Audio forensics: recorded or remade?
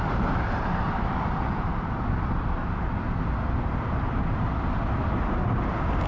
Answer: recorded